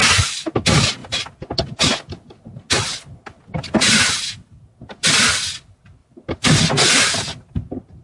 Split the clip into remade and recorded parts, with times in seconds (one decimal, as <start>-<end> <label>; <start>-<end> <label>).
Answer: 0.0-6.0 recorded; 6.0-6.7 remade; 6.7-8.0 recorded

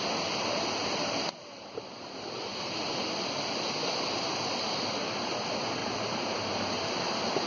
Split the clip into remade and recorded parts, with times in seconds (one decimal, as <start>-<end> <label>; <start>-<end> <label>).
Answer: 0.0-5.8 recorded; 5.8-7.0 remade; 7.0-7.5 recorded

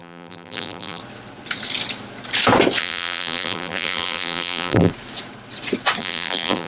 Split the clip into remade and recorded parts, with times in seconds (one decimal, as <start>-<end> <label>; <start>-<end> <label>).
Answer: 0.0-1.0 remade; 1.0-2.8 recorded; 2.8-4.9 remade; 4.9-6.0 recorded; 6.0-6.7 remade

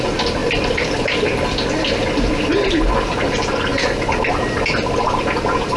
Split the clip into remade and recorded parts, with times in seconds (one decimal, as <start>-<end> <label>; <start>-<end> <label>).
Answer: 0.0-0.4 recorded; 0.4-1.8 remade; 1.8-5.8 recorded

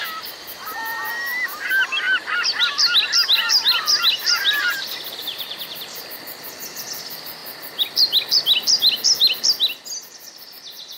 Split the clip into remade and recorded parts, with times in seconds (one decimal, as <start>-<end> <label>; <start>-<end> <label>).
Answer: 0.0-5.2 recorded; 5.2-6.0 remade; 6.0-11.0 recorded

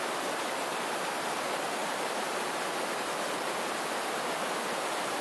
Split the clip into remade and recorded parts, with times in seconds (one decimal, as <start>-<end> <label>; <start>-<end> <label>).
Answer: 0.0-1.8 recorded; 1.8-3.0 remade; 3.0-5.2 recorded

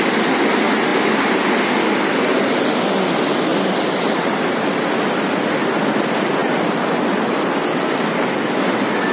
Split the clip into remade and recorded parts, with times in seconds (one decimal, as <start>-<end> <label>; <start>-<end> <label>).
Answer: 0.0-0.9 recorded; 0.9-1.5 remade; 1.5-3.5 recorded; 3.5-5.6 remade; 5.6-6.4 recorded; 6.4-7.5 remade; 7.5-9.1 recorded

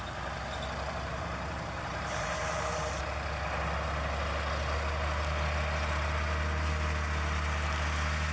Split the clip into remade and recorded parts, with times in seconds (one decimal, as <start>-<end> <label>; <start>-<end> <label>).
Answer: 0.0-1.1 recorded; 1.1-3.0 remade; 3.0-8.3 recorded